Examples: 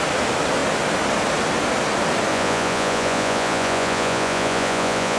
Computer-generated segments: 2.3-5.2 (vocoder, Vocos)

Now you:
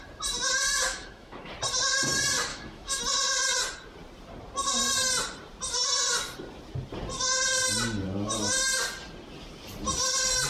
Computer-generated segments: 0.9-1.5 (autoencoder, DAC-VAE); 2.5-3.0

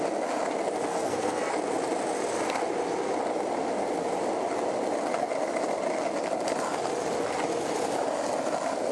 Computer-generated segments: 0.9-1.5 (codec, SNAC)

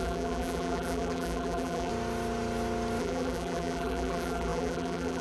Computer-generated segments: 0.0-1.9 (vocoder, BigVGAN v2); 3.0-5.2

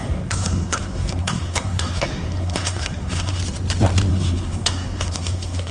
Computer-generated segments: 0.0-3.4 (codec, SNAC); 4.1-5.7